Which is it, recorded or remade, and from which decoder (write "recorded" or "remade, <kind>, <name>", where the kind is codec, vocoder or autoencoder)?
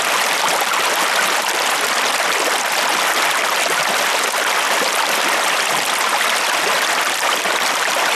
recorded